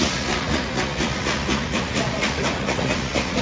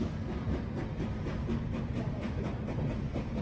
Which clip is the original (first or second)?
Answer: second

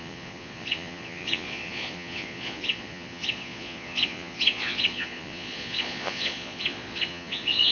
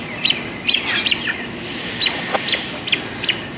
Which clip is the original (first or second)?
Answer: second